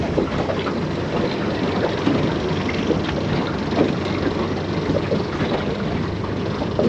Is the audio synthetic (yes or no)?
no